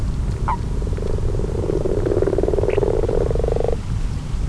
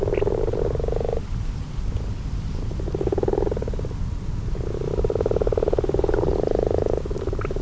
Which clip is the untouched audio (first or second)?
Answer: second